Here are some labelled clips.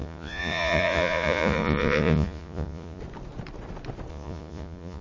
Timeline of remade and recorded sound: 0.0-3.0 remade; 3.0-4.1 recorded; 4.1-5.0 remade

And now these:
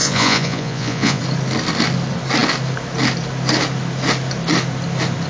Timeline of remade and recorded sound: 0.0-1.2 remade; 1.2-5.3 recorded

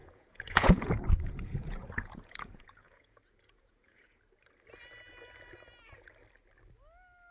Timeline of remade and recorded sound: 0.0-4.2 remade; 4.2-7.3 recorded

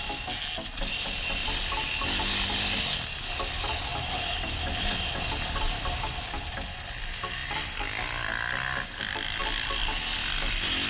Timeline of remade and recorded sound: 0.0-10.9 recorded